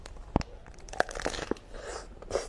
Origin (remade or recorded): recorded